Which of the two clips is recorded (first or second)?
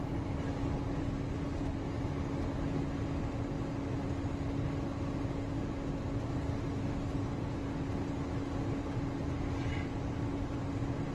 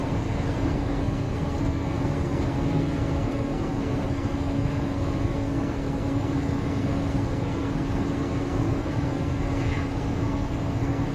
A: first